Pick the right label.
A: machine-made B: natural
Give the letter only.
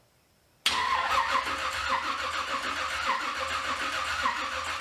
B